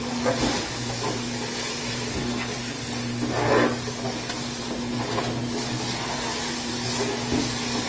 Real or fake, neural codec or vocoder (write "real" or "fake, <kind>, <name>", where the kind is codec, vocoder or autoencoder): real